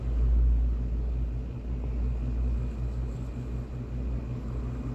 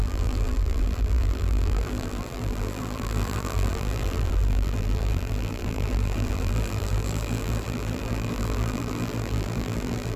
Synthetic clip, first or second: second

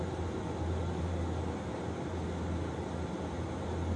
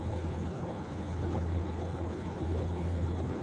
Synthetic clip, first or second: second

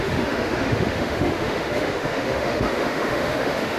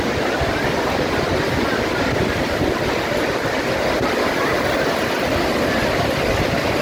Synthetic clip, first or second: first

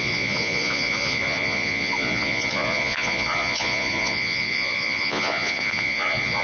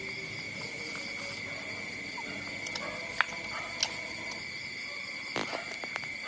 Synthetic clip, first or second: first